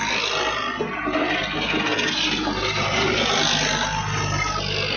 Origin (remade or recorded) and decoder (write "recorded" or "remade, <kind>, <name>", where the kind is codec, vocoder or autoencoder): recorded